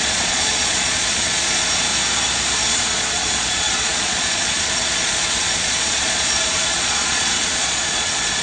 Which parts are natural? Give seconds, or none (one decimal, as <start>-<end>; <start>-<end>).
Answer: 1.9-2.7